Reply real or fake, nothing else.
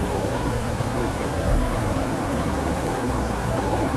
fake